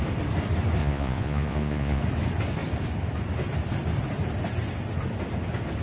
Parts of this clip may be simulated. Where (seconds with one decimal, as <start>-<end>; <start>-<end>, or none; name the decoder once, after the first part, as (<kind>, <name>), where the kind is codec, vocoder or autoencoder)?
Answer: 0.8-2.0 (vocoder, Vocos)